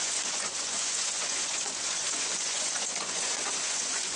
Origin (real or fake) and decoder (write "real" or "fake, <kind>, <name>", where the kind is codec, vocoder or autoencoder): fake, vocoder, Vocos